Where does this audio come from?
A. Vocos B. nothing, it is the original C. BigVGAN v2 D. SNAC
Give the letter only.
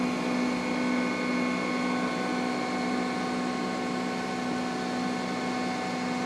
B